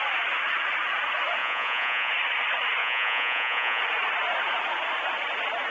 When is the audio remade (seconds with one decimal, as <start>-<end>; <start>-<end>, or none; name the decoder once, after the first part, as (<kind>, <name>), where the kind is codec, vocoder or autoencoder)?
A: 1.4-2.1 (vocoder, Vocos); 2.8-3.8